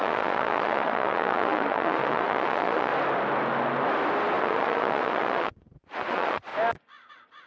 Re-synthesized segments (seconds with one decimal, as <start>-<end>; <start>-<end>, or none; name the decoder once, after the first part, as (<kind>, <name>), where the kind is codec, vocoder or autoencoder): 0.0-2.9 (vocoder, Vocos); 4.4-6.5; 7.1-7.5